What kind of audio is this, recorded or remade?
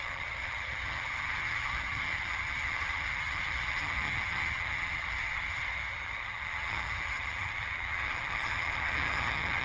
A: remade